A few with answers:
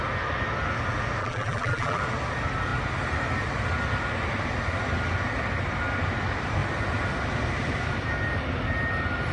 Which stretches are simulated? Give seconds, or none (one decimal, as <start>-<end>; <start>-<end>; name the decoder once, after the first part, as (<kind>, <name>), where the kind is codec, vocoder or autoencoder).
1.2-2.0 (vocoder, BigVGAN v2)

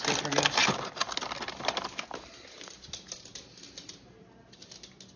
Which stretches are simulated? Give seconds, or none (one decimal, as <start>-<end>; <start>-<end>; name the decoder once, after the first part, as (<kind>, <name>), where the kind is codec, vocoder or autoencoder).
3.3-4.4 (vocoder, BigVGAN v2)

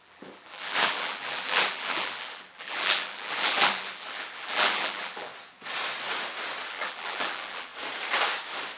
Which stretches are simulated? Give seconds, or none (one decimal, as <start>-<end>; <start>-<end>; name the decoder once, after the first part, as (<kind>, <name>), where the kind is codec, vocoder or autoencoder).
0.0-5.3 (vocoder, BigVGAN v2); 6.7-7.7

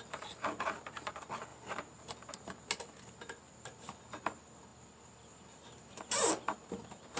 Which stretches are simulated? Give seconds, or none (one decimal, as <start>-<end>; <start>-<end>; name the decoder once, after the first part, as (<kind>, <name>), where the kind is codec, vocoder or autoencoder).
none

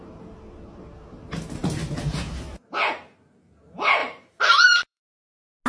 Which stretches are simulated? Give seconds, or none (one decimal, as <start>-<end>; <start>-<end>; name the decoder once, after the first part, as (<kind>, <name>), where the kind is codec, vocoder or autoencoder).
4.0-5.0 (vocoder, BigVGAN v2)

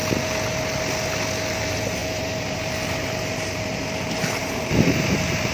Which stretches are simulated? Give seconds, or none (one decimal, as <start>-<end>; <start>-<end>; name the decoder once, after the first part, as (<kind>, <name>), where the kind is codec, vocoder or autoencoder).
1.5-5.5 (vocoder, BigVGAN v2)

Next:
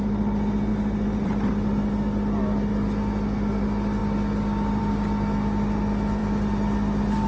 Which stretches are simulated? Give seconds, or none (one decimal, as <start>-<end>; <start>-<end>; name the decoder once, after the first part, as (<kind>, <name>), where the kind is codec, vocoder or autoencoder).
0.7-3.6 (vocoder, BigVGAN v2); 4.0-4.8; 6.2-7.3

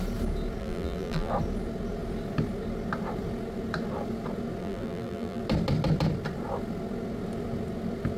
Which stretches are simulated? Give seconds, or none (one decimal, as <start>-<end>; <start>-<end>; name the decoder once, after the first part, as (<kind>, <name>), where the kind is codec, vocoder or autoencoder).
0.6-1.3 (vocoder, BigVGAN v2); 4.6-5.4